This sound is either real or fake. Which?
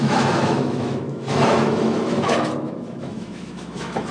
fake